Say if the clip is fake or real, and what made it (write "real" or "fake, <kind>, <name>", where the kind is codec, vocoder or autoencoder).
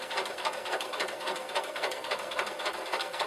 fake, codec, SNAC